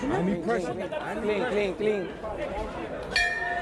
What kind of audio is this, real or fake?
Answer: real